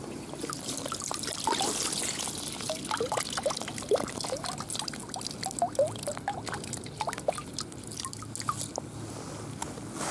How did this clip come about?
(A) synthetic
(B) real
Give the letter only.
B